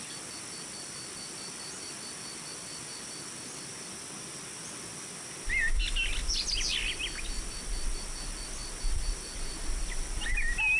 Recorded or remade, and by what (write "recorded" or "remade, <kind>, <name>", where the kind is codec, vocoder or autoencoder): recorded